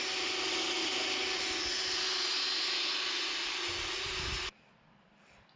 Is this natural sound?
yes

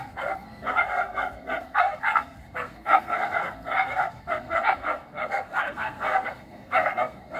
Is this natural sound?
no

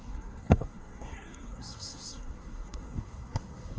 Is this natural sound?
no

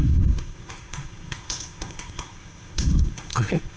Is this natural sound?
no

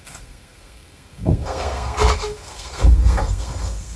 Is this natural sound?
no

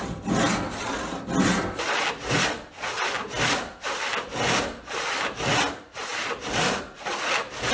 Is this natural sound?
yes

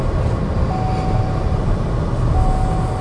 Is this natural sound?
yes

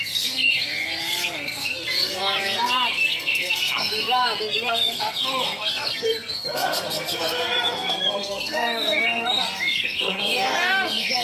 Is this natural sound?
no